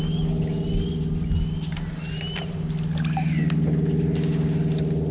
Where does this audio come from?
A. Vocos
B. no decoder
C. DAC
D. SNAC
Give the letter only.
B